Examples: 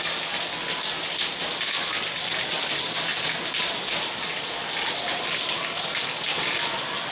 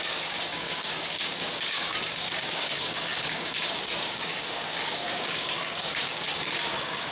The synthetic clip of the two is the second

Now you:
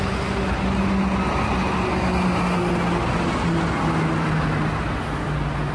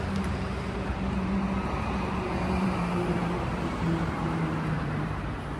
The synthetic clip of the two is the second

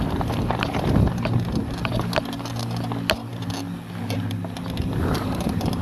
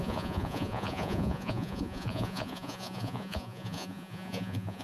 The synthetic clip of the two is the second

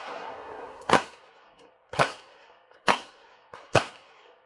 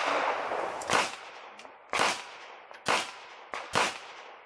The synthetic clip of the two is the first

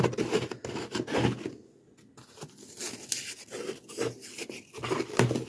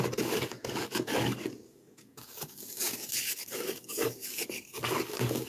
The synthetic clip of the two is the second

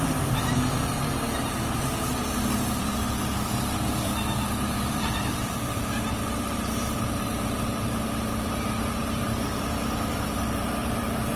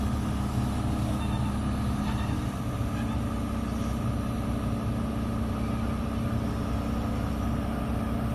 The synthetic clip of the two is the first